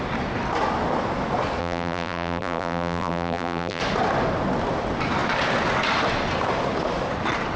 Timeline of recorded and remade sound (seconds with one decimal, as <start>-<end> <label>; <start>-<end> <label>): 0.0-1.6 recorded; 1.6-3.8 remade; 3.8-7.6 recorded